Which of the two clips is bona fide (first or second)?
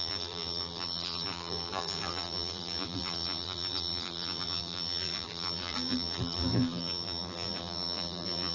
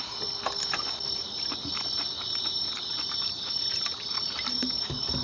second